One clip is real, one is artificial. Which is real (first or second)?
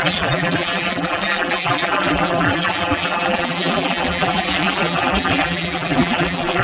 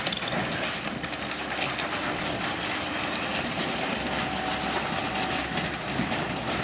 second